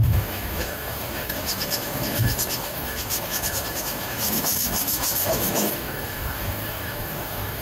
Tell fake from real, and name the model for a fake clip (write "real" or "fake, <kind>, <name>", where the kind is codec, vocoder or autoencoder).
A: fake, codec, DAC